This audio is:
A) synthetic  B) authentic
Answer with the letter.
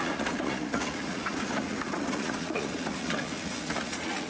A